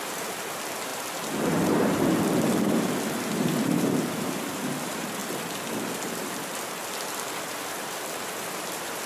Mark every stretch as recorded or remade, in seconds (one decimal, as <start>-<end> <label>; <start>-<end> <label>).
0.0-5.2 remade; 5.2-7.4 recorded; 7.4-9.1 remade